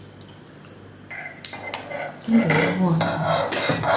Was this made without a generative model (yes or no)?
yes